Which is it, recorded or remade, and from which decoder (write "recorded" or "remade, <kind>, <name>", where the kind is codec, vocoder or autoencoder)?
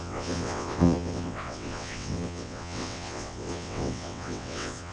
remade, vocoder, WaveNeXt